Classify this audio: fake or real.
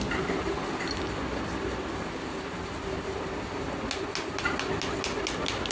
real